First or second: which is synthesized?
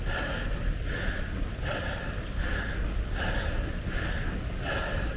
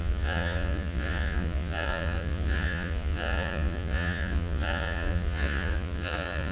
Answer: second